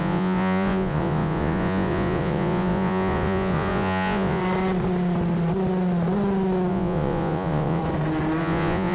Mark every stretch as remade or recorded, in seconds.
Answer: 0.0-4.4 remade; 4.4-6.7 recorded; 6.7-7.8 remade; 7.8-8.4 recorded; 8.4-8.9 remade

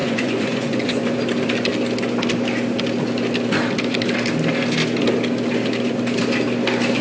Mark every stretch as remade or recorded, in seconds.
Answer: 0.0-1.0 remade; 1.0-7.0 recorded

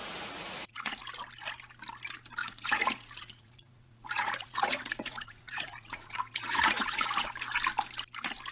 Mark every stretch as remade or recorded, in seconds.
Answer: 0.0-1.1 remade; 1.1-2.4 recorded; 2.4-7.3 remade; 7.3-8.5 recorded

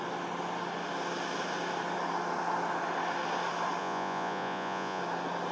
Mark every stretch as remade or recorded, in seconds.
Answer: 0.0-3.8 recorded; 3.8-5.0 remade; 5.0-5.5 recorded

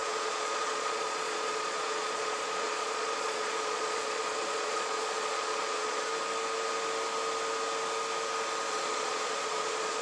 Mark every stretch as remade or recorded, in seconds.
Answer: 0.0-6.1 remade; 6.1-8.7 recorded; 8.7-10.0 remade

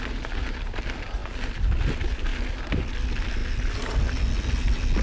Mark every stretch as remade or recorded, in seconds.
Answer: 0.0-5.0 recorded